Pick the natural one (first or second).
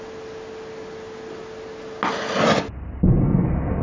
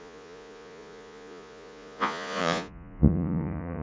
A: first